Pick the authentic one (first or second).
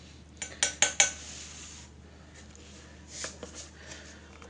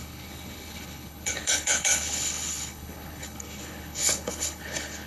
first